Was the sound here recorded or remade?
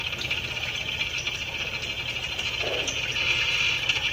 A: recorded